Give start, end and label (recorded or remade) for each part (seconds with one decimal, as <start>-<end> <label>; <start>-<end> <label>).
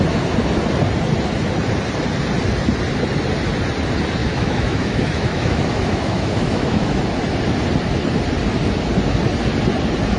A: 0.0-4.2 recorded; 4.2-7.0 remade; 7.0-10.2 recorded